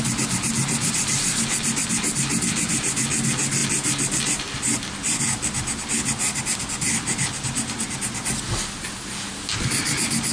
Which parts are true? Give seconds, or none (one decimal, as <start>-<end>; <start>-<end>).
0.0-10.3